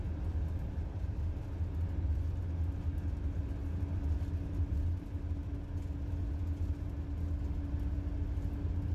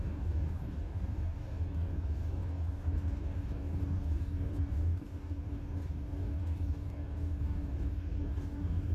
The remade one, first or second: second